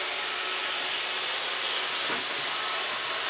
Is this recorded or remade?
recorded